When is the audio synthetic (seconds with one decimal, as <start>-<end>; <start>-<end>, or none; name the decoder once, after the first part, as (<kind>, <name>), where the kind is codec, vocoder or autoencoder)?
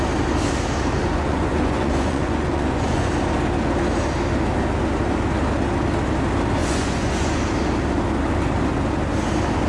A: 1.0-3.1 (vocoder, Vocos); 6.6-7.4